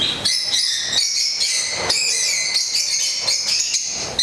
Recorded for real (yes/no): yes